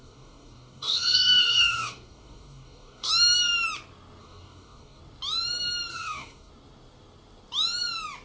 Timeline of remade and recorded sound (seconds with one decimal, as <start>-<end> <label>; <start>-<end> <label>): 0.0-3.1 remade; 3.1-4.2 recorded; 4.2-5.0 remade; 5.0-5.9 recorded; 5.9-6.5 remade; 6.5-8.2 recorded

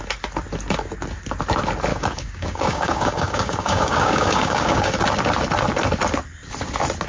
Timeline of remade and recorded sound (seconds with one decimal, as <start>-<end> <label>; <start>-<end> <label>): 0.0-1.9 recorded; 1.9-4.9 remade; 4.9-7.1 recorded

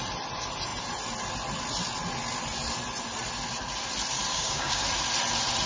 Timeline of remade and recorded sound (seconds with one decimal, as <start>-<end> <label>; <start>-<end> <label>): 0.0-4.3 recorded; 4.3-4.8 remade; 4.8-5.7 recorded